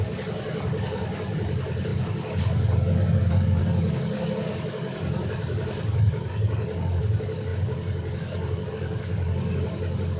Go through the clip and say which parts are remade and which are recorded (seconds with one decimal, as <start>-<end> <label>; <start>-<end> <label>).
0.0-10.2 remade